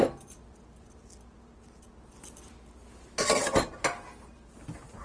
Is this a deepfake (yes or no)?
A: no